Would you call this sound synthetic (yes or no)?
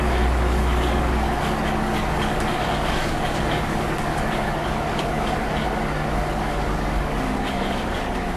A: yes